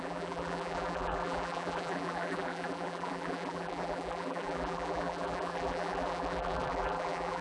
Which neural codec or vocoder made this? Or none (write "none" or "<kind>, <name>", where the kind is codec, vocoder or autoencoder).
vocoder, BigVGAN v2